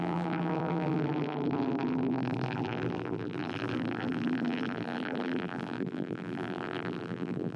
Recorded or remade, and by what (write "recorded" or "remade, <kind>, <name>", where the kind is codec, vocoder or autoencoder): remade, vocoder, BigVGAN v2